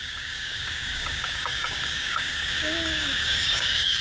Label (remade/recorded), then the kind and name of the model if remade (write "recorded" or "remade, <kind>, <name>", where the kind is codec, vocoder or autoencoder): remade, codec, DAC